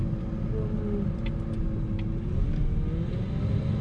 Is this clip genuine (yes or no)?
yes